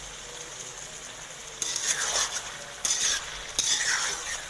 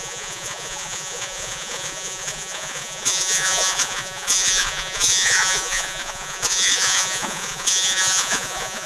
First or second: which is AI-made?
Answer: second